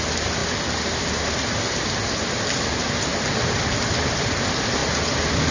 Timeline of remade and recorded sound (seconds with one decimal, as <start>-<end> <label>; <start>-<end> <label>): 0.0-3.1 recorded; 3.1-4.3 remade; 4.3-5.5 recorded